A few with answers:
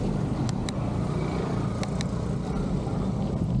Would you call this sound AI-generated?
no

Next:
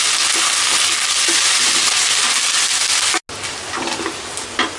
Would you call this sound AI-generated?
no